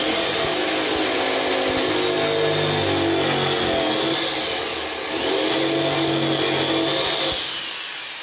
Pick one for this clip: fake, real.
real